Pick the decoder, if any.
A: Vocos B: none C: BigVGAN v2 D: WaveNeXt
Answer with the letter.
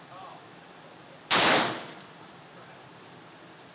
C